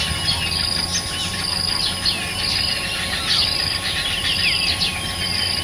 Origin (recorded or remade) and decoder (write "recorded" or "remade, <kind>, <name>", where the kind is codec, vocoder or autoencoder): recorded